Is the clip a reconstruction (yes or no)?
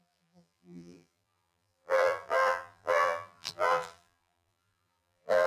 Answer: yes